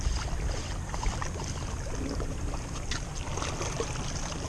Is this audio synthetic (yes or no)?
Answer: no